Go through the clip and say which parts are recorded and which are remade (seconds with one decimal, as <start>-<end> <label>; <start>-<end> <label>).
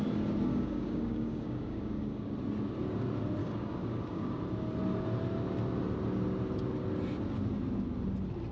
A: 0.0-0.5 recorded; 0.5-2.3 remade; 2.3-3.4 recorded; 3.4-4.4 remade; 4.4-8.5 recorded